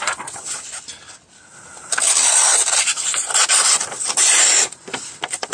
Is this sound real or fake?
fake